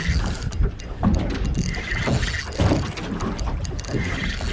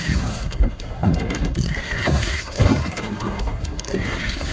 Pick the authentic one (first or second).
first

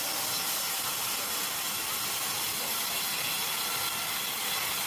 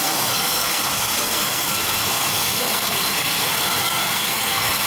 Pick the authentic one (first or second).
first